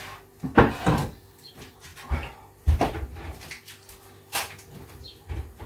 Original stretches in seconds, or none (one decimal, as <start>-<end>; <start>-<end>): 0.0-1.0; 1.5-5.7